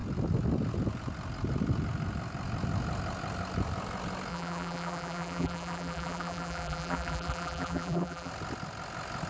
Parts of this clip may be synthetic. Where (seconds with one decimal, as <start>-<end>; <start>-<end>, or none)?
4.3-8.3